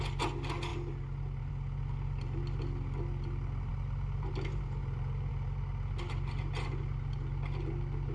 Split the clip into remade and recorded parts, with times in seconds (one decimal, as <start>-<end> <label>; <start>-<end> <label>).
0.0-8.1 recorded